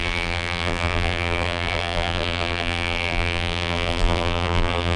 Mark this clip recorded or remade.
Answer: remade